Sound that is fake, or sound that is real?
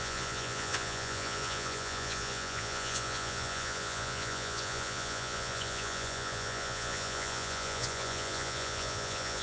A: fake